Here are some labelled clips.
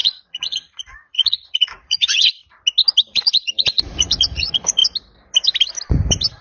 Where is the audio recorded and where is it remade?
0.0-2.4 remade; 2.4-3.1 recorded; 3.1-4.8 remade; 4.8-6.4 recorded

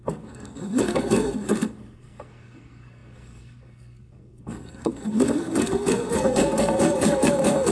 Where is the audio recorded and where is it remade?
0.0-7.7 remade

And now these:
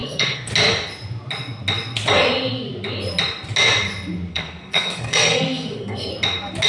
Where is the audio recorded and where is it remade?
0.0-0.5 remade; 0.5-4.3 recorded; 4.3-6.1 remade; 6.1-6.7 recorded

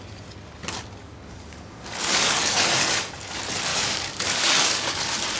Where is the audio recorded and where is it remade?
0.0-1.0 recorded; 1.0-3.3 remade; 3.3-3.7 recorded; 3.7-5.0 remade; 5.0-5.4 recorded